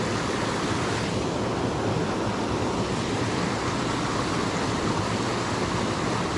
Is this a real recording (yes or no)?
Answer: yes